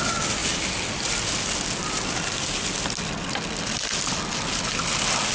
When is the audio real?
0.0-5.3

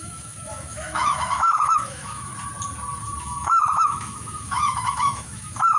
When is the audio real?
2.3-3.2